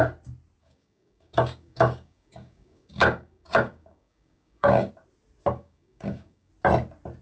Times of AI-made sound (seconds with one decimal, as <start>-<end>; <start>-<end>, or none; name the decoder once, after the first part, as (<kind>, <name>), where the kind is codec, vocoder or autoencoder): 0.6-4.9 (codec, DAC); 5.5-6.5